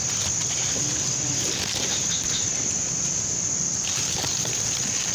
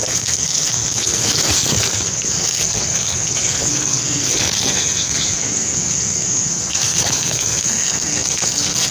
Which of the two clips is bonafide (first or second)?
first